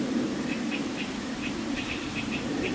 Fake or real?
fake